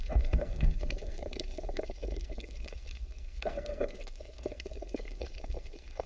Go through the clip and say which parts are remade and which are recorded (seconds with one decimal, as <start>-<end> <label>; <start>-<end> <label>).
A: 0.0-6.1 remade